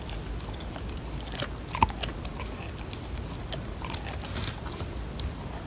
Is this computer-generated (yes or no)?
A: no